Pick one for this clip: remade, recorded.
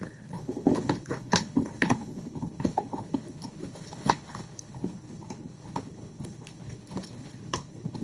remade